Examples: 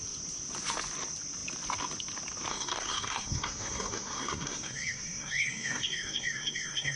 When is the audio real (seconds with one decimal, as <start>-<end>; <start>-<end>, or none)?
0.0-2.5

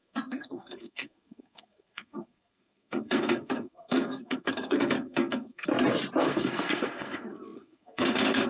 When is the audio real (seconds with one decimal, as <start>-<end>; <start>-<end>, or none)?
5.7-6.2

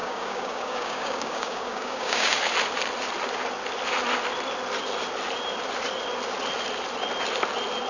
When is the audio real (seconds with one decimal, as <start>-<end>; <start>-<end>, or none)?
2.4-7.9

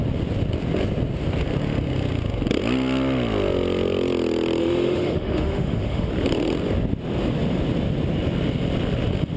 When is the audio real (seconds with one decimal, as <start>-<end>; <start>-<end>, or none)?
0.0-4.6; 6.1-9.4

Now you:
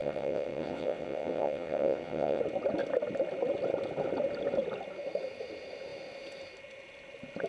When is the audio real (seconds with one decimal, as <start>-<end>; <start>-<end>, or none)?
2.4-7.5